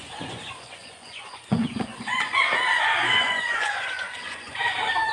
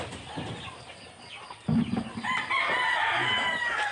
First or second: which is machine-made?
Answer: first